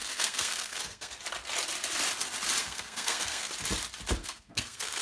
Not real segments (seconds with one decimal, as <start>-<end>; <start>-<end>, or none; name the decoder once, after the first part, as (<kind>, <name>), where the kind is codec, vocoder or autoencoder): 0.0-1.1 (codec, SNAC); 2.6-3.5; 4.2-5.0